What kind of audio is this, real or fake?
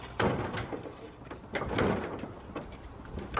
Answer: real